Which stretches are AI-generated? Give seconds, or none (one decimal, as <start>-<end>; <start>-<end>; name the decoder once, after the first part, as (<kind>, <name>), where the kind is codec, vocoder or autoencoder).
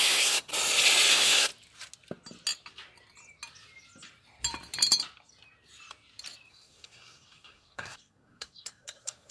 0.0-0.5 (codec, SNAC); 1.1-1.5; 6.5-9.3